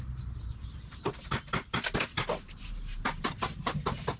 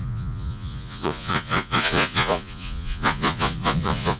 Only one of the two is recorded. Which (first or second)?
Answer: first